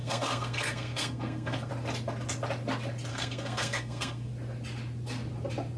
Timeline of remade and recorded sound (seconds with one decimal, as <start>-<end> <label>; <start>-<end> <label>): 0.0-1.7 remade; 1.7-3.1 recorded; 3.1-4.3 remade; 4.3-5.8 recorded